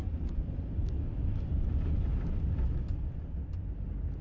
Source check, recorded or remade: recorded